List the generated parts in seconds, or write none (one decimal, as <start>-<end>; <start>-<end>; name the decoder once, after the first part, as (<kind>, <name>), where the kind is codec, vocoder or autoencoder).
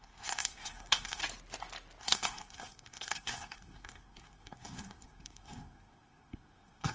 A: 0.0-1.2 (codec, SNAC); 2.0-6.9